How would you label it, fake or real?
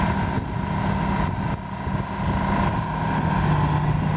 real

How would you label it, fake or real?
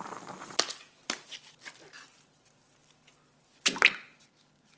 real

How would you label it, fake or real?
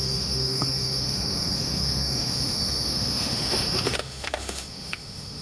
fake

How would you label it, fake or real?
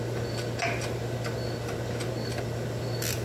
real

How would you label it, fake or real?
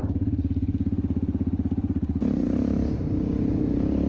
real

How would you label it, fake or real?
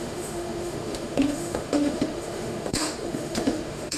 fake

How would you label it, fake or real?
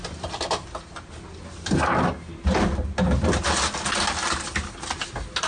real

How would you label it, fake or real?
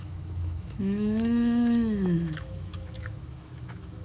fake